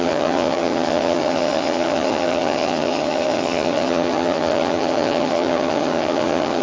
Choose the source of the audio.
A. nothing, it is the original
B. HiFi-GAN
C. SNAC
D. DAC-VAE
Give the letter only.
B